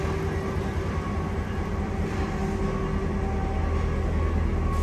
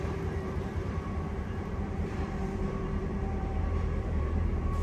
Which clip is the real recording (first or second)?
first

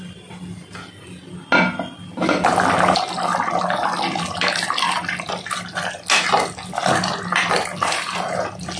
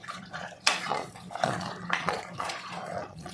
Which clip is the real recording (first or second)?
first